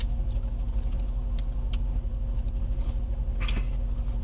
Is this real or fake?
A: real